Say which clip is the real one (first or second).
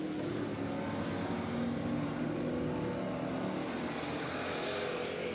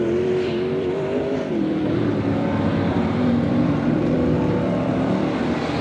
first